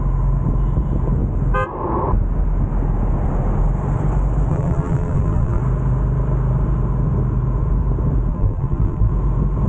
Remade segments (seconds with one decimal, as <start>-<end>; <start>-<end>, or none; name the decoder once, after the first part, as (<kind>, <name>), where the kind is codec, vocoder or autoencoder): 4.5-5.6 (vocoder, BigVGAN v2); 8.3-9.1